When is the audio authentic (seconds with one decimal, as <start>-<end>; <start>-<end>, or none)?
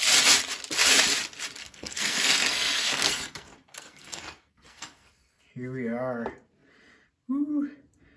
0.0-1.6; 5.4-8.2